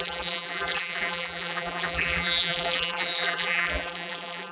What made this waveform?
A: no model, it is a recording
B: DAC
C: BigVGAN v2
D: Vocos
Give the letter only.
C